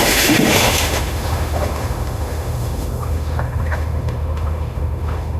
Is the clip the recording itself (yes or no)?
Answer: no